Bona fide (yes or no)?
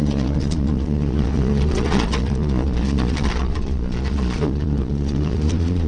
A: no